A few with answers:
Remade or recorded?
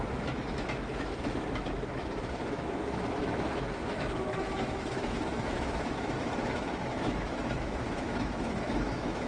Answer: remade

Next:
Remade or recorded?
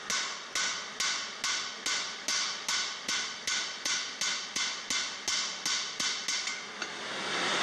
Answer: recorded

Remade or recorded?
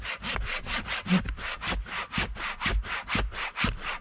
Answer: recorded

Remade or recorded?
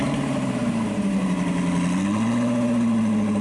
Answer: recorded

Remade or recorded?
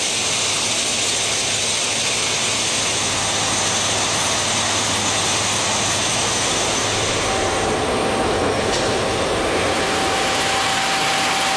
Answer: recorded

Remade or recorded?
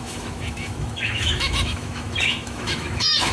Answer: remade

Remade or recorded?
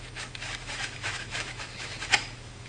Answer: remade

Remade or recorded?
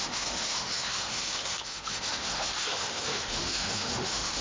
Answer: remade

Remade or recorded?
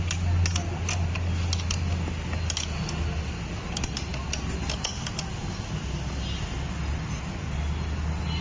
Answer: recorded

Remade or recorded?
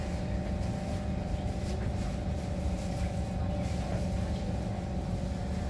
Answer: recorded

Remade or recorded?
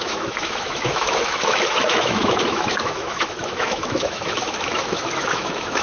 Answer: remade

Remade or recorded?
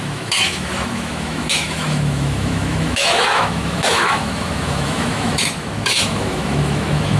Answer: remade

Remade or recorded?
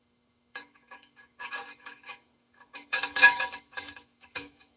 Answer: remade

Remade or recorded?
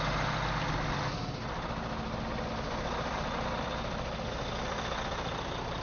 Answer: recorded